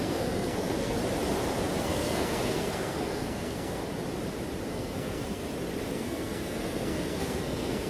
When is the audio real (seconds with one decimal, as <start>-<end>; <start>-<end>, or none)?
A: 1.0-1.8; 3.8-4.7; 5.4-5.9